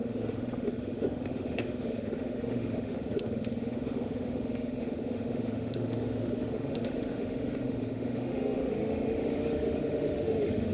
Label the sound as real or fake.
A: fake